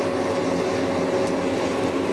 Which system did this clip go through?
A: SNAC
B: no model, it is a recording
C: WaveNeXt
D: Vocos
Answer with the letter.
B